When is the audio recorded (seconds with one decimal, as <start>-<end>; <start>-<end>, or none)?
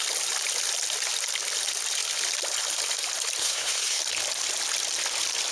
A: 0.0-3.4; 4.0-5.5